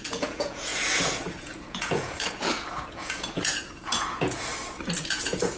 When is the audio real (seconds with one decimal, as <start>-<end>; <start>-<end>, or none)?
4.5-5.0